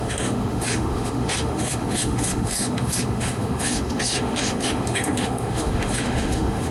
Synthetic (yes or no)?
yes